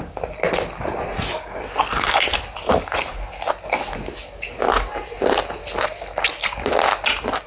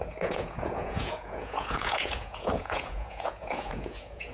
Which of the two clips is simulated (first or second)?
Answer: second